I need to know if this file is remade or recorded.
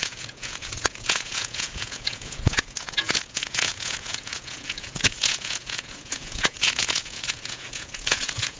remade